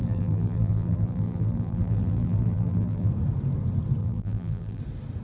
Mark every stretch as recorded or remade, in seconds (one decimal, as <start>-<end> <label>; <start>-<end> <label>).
0.0-3.1 remade; 3.1-4.0 recorded; 4.0-4.8 remade; 4.8-5.2 recorded